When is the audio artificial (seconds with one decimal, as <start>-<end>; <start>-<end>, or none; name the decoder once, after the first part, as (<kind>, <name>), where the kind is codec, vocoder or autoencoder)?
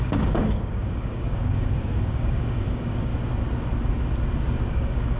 0.0-3.1 (codec, DAC); 4.7-5.2